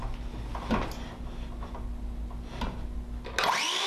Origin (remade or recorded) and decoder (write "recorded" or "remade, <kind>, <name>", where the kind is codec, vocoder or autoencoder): recorded